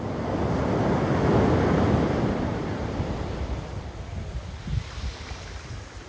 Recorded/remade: remade